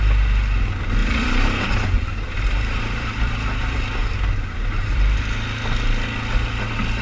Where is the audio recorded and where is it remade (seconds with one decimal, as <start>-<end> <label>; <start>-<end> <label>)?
0.0-1.0 recorded; 1.0-5.2 remade; 5.2-7.0 recorded